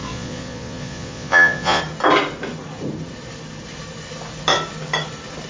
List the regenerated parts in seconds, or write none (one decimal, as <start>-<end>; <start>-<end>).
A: 0.0-1.8

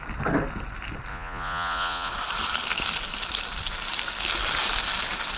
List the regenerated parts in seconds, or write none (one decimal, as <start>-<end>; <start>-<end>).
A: 1.1-2.1

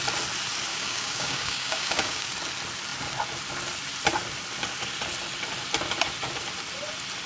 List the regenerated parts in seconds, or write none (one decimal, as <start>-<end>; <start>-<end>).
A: 0.7-2.3

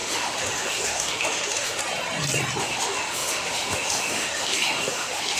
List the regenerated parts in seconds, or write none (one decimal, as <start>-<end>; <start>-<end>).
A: 0.0-1.8; 2.6-5.4

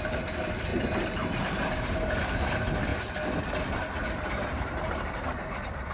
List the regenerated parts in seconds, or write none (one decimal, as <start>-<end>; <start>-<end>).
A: 0.0-0.7; 1.4-2.9; 3.9-5.9

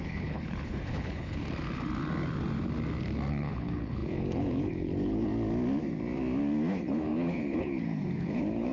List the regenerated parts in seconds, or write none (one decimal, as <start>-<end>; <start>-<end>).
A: 0.0-1.4; 3.3-5.3; 6.7-8.7

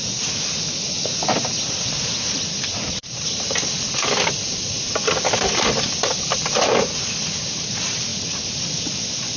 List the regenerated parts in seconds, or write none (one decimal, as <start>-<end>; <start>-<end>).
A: none

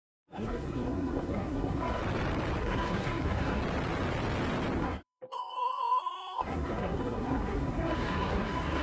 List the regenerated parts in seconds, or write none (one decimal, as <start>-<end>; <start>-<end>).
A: 0.0-2.0; 2.6-3.6; 4.8-8.8